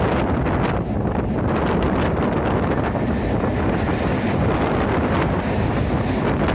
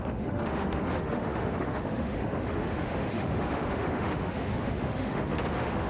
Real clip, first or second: first